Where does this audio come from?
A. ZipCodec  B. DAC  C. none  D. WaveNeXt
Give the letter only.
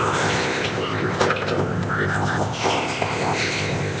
A